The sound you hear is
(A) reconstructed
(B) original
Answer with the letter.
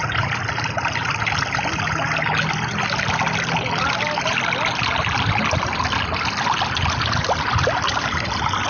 B